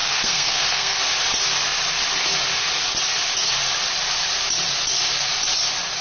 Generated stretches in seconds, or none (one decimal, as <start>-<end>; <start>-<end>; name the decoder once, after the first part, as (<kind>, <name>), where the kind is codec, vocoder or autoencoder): 0.0-1.0 (codec, SNAC)

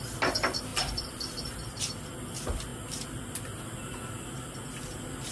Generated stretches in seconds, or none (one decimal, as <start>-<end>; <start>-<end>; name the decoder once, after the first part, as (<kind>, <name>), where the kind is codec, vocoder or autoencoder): 0.7-1.9 (vocoder, BigVGAN v2); 2.7-3.8